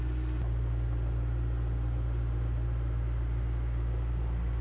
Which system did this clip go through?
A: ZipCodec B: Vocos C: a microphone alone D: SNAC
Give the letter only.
C